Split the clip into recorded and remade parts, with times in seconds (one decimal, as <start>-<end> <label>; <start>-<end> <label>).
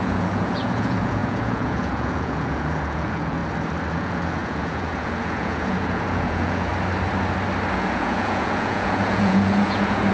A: 0.0-3.4 remade; 3.4-3.9 recorded; 3.9-6.7 remade; 6.7-7.7 recorded; 7.7-10.1 remade